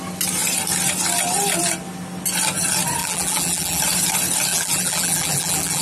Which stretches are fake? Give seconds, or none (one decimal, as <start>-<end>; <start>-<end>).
3.0-3.8; 4.5-5.8